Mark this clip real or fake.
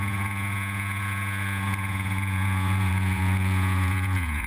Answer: fake